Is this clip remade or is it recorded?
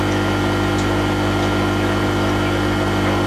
recorded